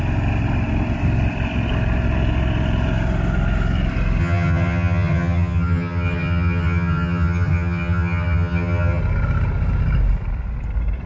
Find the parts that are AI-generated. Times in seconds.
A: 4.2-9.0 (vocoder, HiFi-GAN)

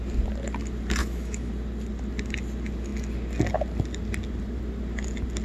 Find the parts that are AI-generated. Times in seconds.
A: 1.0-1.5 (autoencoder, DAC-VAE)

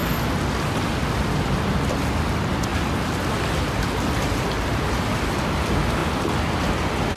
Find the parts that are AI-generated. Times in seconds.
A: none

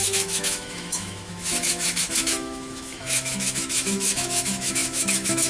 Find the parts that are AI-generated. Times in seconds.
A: 0.0-5.5 (autoencoder, DAC-VAE)

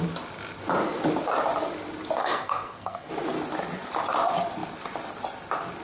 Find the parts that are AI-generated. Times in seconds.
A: 2.2-3.1 (codec, SNAC)

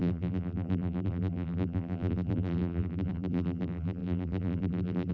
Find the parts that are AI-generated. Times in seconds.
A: 0.0-5.1 (vocoder, BigVGAN v2)

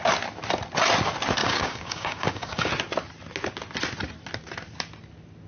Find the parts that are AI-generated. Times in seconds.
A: 1.4-2.7 (codec, DAC)

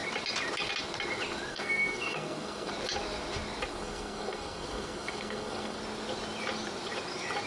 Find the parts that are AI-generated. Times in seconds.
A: 1.5-2.7 (codec, SNAC); 3.7-5.8